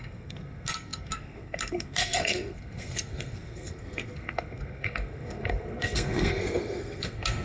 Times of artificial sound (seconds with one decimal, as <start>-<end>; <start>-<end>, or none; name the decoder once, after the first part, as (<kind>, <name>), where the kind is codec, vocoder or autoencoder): 0.0-7.4 (codec, SNAC)